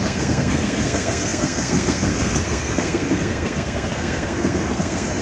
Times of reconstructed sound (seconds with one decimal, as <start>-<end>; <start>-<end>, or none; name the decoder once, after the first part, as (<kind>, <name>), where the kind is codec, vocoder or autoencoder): 0.0-5.2 (codec, SNAC)